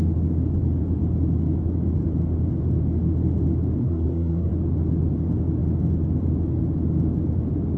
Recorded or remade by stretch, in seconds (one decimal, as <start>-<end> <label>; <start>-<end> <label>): 0.0-3.8 recorded; 3.8-4.5 remade; 4.5-7.8 recorded